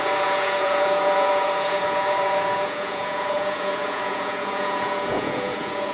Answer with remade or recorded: remade